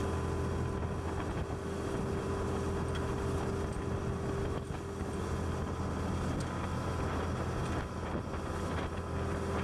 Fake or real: real